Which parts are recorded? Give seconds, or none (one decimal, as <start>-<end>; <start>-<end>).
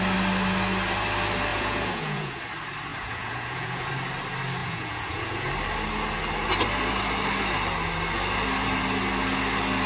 0.0-1.5; 2.4-2.9; 3.9-4.6; 5.5-9.9